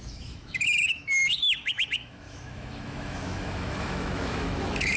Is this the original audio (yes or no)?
no